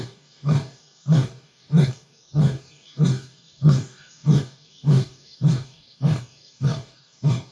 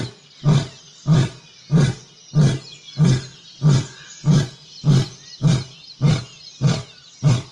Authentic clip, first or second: second